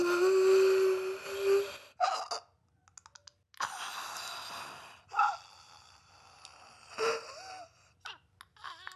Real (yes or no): yes